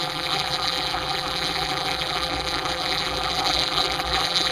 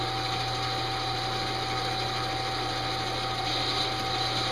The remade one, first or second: first